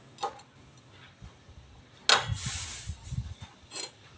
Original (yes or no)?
yes